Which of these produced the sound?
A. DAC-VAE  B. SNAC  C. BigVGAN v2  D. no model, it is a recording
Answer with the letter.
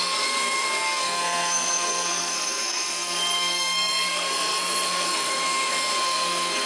B